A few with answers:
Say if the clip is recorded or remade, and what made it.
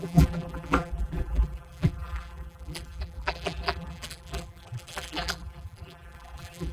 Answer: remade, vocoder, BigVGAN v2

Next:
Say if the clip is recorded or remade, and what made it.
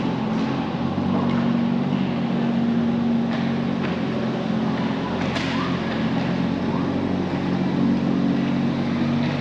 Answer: recorded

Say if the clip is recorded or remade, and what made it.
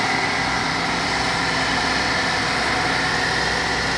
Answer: remade, vocoder, BigVGAN v2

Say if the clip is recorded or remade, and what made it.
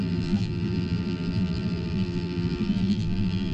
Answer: remade, vocoder, BigVGAN v2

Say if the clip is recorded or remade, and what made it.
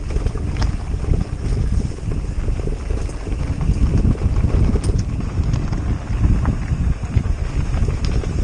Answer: recorded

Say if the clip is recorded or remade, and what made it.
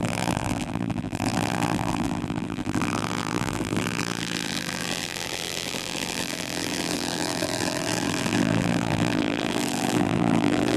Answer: remade, vocoder, BigVGAN v2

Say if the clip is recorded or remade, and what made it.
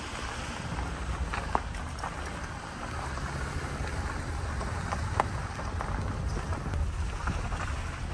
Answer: recorded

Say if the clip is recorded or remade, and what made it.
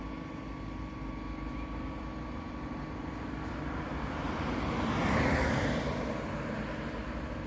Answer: recorded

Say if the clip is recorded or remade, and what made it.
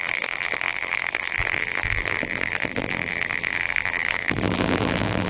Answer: remade, vocoder, BigVGAN v2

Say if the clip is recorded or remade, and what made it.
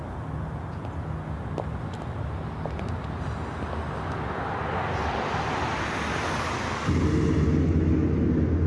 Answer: recorded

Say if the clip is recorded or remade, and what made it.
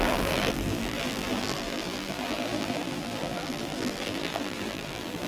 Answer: remade, vocoder, BigVGAN v2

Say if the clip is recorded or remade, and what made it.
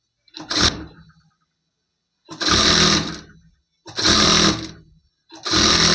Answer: recorded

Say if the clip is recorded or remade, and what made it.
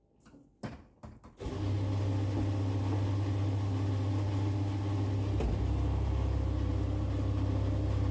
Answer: recorded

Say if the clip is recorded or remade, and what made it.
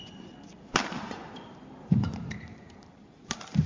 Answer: remade, vocoder, BigVGAN v2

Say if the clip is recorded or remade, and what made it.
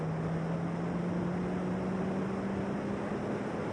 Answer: recorded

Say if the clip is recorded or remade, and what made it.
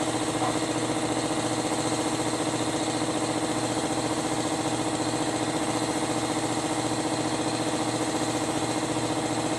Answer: recorded